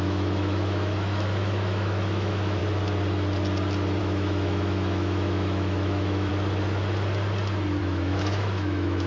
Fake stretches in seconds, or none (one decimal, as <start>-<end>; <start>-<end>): 0.0-2.6; 4.0-6.3; 7.8-9.1